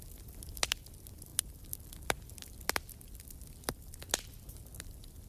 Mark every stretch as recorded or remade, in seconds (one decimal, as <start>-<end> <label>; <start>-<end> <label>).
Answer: 0.0-5.3 recorded

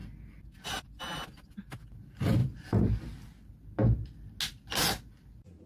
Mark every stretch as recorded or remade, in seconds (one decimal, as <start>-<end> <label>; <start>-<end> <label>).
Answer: 0.0-2.4 recorded; 2.4-3.0 remade; 3.0-5.7 recorded